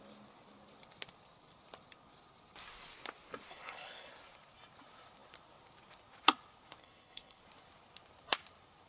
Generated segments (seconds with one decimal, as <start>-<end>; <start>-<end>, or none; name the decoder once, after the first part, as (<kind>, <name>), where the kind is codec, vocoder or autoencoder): 3.5-4.1 (codec, HILCodec); 6.8-7.4